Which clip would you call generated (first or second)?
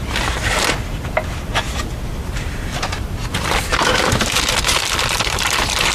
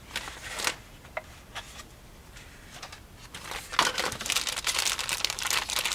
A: first